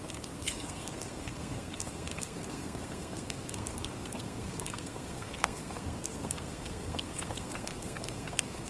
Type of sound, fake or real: fake